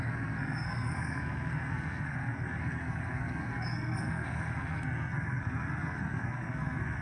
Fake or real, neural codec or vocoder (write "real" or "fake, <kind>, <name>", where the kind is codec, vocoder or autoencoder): fake, codec, SNAC